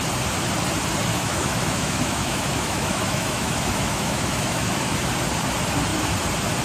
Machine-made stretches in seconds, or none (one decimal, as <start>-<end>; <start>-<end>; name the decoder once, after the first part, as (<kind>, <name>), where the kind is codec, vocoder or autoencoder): 1.1-5.1 (autoencoder, DAC-VAE)